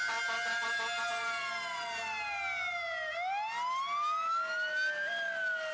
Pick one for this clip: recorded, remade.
recorded